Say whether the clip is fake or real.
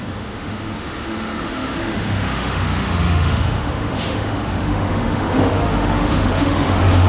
fake